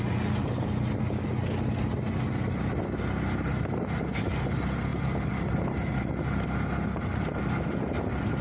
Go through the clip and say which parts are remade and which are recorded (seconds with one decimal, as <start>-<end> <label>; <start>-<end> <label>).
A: 0.0-8.4 recorded